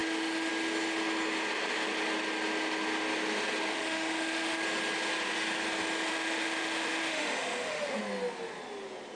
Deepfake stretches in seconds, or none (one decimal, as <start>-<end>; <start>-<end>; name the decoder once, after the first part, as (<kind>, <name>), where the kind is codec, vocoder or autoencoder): 0.0-0.5 (autoencoder, DAC-VAE); 3.7-4.6; 6.1-8.0